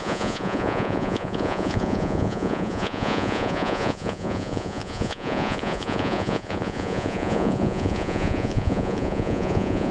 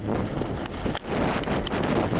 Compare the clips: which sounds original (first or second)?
second